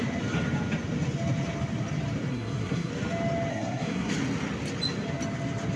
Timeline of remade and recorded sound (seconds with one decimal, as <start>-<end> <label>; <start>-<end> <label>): 0.0-2.3 recorded; 2.3-2.9 remade; 2.9-3.5 recorded; 3.5-4.1 remade; 4.1-5.8 recorded